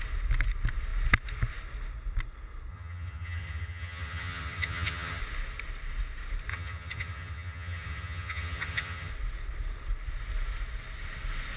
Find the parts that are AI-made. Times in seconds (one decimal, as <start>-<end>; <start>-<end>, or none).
2.7-5.2; 6.5-9.1